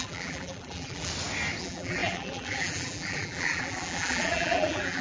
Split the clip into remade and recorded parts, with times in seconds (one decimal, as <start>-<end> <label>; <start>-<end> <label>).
0.0-1.1 remade; 1.1-1.6 recorded; 1.6-5.0 remade